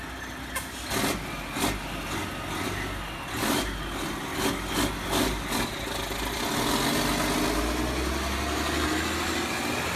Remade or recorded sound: recorded